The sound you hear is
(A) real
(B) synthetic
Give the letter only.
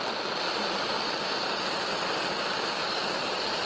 A